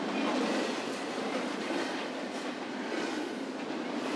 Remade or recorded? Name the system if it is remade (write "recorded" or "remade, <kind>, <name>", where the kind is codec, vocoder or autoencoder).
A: recorded